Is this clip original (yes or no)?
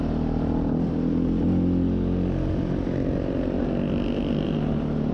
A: yes